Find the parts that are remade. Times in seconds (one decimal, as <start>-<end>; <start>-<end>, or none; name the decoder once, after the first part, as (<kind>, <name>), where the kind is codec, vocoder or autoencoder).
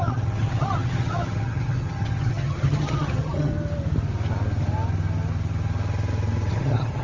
0.0-3.5 (vocoder, HiFi-GAN); 6.5-7.0